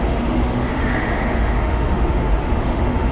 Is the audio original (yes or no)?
no